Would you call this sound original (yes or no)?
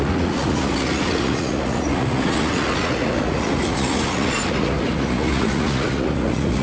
no